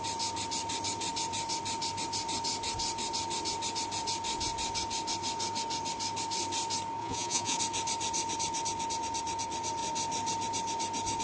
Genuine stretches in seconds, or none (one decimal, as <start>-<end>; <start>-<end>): 0.0-7.0; 7.6-11.2